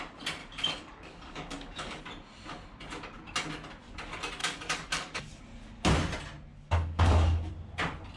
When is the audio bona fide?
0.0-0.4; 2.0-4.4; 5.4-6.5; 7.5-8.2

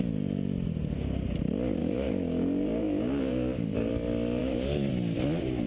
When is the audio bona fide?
0.0-1.8; 3.9-4.4; 4.9-5.7